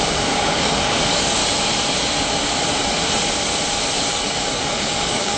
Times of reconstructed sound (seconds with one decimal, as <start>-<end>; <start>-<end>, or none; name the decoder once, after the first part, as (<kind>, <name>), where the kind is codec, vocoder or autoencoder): 0.0-1.4 (codec, DAC); 4.1-5.4